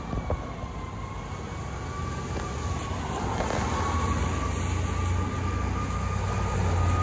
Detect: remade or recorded recorded